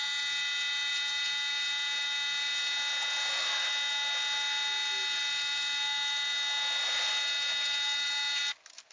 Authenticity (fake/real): real